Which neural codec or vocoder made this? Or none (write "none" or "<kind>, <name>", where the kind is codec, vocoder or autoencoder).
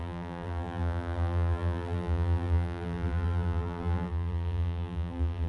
vocoder, BigVGAN v2